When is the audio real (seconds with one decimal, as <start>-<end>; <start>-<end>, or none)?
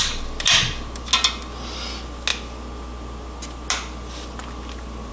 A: 0.0-5.1